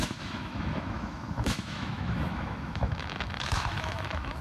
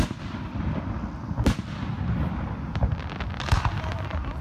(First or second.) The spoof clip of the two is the first